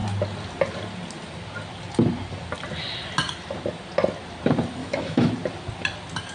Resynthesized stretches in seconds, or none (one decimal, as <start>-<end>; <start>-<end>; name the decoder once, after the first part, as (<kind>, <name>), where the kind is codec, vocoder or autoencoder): 4.8-5.3 (autoencoder, DAC-VAE)